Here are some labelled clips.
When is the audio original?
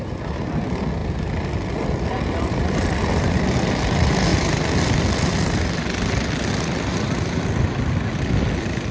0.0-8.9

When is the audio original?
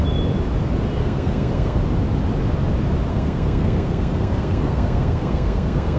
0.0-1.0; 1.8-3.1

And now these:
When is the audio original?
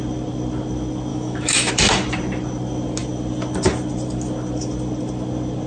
0.0-1.1; 1.7-5.7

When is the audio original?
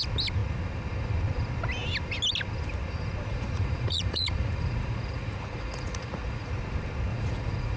0.0-3.3; 6.5-7.1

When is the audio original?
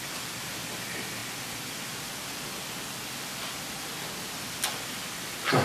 0.0-5.6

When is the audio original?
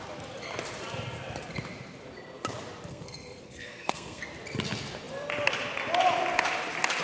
0.0-2.9; 4.2-7.0